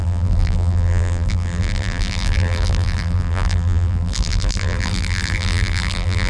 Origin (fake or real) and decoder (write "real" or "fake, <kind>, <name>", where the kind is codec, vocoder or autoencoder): fake, vocoder, BigVGAN v2